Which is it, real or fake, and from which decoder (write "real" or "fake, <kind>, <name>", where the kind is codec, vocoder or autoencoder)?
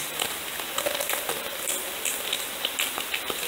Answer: real